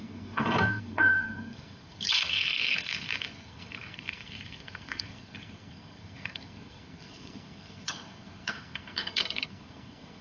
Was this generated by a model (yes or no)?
yes